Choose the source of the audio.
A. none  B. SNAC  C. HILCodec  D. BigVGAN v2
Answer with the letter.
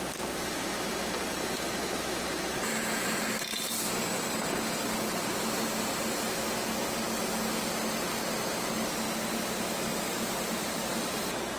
A